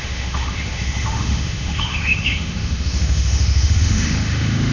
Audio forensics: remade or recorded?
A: remade